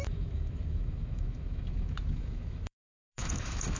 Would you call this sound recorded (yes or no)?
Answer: no